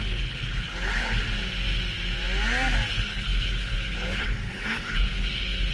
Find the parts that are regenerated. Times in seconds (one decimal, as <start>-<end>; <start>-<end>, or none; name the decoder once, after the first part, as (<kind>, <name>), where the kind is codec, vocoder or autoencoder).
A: 0.0-1.2 (codec, HILCodec); 2.9-5.7